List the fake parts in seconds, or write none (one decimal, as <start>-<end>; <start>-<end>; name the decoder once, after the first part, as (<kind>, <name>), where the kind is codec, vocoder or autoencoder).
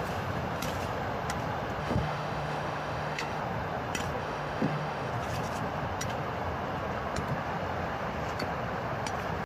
1.8-3.4 (autoencoder, DAC-VAE); 4.2-5.1